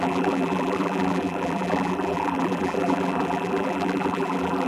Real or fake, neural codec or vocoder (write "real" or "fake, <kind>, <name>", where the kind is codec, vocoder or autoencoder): fake, vocoder, BigVGAN v2